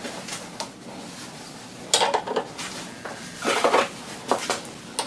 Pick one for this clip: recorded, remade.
recorded